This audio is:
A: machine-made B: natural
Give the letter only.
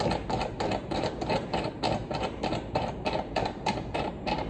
A